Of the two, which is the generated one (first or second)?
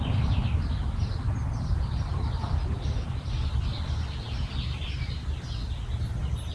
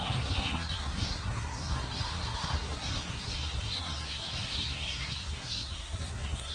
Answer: second